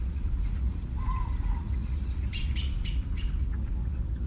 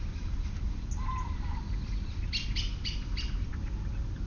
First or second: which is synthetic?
first